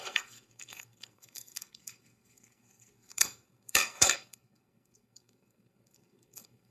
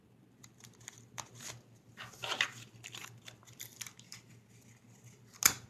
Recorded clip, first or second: second